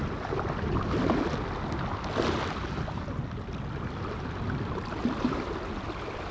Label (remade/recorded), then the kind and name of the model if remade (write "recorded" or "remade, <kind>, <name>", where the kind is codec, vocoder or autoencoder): recorded